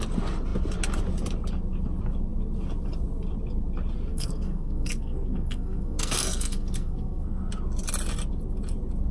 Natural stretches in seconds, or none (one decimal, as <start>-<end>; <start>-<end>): 0.0-4.1; 7.5-9.1